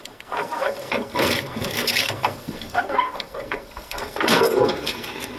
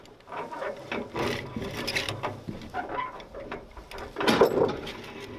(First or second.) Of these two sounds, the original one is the second